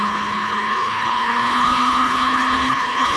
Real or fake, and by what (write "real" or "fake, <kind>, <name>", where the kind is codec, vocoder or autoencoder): fake, codec, HILCodec